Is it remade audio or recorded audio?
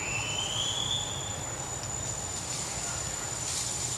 recorded